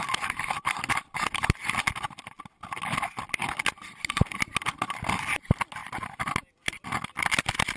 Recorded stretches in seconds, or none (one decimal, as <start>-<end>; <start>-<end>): 0.0-7.8